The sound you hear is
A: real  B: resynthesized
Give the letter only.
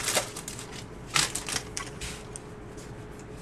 A